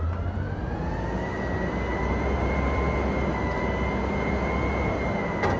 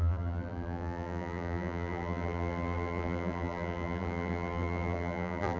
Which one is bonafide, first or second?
first